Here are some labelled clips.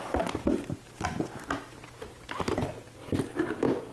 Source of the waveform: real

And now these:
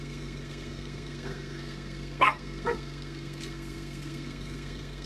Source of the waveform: fake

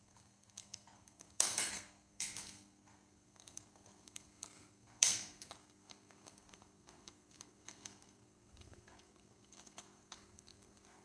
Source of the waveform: fake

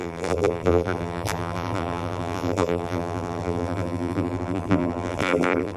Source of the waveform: fake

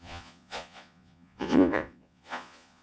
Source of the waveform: fake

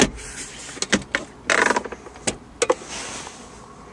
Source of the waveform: real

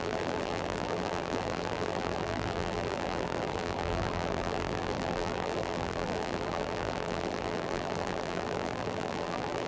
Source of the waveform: fake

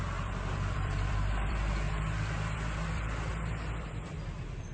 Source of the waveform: fake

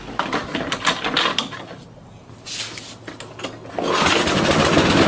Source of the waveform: real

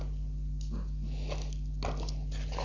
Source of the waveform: real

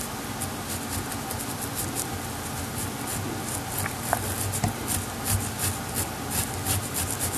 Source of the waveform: real